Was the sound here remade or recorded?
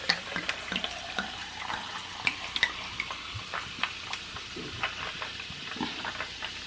recorded